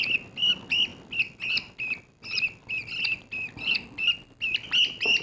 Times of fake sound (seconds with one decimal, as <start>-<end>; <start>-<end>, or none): none